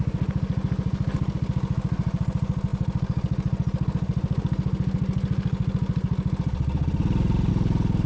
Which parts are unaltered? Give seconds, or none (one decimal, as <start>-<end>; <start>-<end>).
0.0-8.1